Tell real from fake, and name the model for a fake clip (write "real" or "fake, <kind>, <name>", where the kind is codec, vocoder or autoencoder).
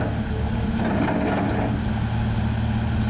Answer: real